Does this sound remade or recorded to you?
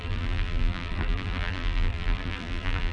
remade